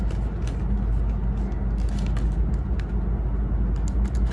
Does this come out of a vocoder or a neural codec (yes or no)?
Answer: no